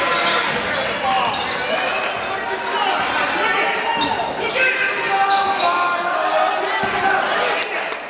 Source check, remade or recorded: recorded